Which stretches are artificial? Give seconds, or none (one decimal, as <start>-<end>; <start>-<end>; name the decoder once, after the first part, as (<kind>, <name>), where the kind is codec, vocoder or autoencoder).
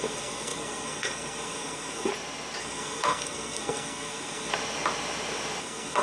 0.0-2.1 (codec, SNAC); 2.6-4.5; 5.6-6.0